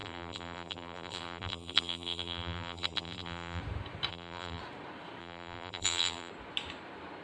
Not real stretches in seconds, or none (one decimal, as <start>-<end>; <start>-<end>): 0.0-3.6; 4.1-4.6; 5.2-6.3